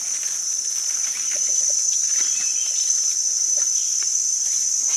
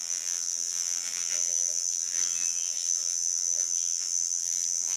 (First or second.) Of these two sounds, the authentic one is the first